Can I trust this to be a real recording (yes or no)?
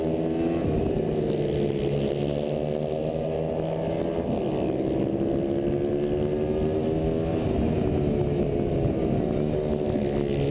yes